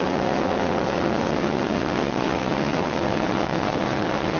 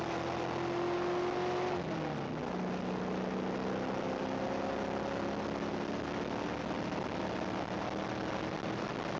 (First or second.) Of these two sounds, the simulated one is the first